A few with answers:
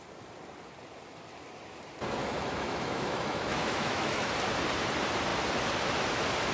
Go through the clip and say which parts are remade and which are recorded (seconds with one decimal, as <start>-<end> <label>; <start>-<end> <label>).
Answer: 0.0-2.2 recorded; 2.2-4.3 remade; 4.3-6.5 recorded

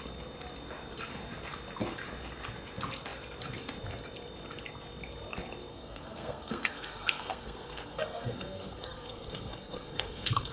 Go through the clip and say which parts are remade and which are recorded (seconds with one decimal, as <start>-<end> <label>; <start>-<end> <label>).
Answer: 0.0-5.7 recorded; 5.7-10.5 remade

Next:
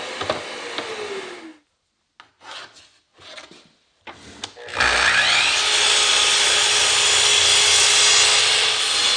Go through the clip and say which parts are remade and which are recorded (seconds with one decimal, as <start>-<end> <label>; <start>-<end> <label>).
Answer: 0.0-9.2 recorded

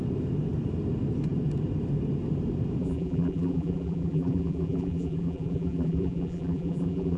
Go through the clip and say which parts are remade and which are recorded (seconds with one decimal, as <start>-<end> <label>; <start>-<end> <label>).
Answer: 0.0-2.8 recorded; 2.8-7.2 remade

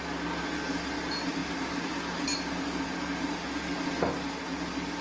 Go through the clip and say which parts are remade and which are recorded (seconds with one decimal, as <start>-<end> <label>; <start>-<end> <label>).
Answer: 0.0-5.0 recorded

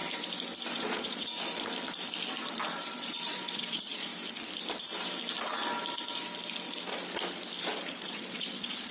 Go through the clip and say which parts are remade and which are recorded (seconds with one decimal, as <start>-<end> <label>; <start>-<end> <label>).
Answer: 0.0-0.7 recorded; 0.7-1.3 remade; 1.3-2.7 recorded; 2.7-4.1 remade; 4.1-7.6 recorded; 7.6-8.9 remade

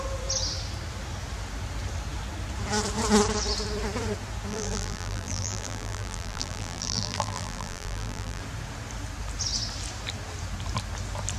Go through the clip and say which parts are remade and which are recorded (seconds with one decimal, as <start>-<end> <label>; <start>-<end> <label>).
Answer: 0.0-4.5 recorded; 4.5-8.4 remade; 8.4-11.4 recorded